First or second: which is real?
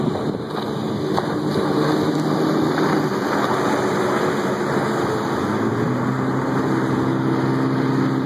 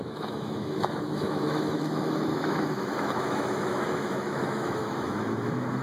first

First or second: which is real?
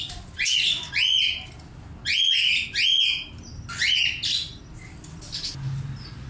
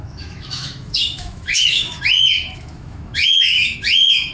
first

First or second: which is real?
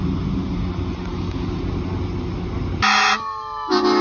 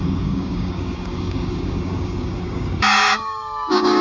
first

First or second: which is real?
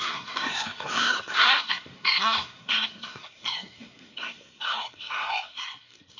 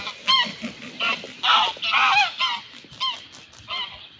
second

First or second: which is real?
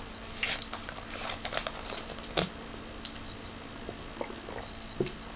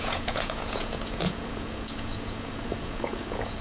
first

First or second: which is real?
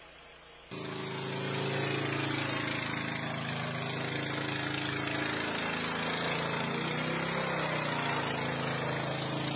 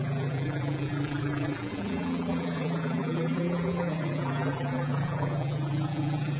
first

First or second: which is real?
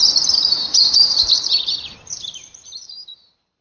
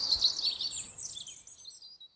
second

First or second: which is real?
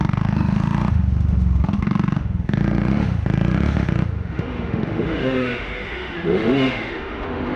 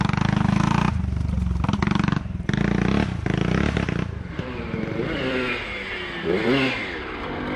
second